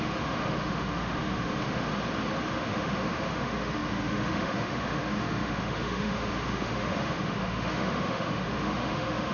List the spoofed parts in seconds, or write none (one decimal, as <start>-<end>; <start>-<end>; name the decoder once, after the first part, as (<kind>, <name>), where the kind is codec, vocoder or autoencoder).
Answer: 0.0-1.9 (autoencoder, DAC-VAE); 2.5-9.3